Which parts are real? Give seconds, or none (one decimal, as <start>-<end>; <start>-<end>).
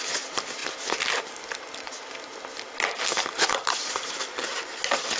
0.0-5.2